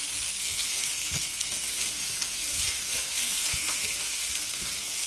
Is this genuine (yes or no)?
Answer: no